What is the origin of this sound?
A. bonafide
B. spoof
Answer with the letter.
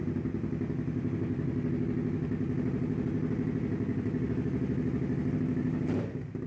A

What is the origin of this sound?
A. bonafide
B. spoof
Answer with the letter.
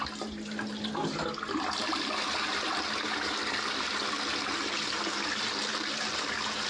A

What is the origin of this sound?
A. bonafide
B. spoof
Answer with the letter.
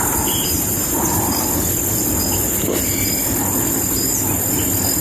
A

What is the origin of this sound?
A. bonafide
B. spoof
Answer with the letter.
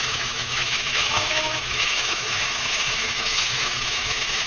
B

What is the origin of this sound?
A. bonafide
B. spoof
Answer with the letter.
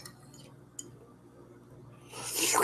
A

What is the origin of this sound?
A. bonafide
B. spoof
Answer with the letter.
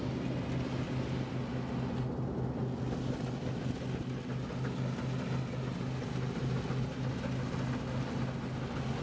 A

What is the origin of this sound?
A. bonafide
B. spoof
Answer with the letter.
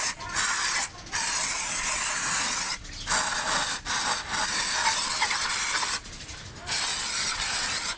A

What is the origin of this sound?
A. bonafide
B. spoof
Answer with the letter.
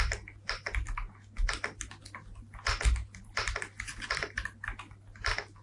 A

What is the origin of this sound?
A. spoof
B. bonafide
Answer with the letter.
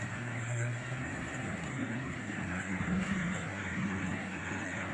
A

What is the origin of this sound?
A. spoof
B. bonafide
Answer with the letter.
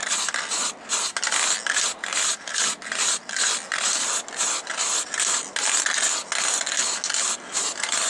B